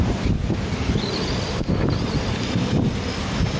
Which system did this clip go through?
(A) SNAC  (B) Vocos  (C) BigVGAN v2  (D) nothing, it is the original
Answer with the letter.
D